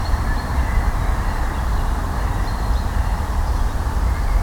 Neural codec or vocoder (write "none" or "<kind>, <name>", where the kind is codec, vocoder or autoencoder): vocoder, BigVGAN v2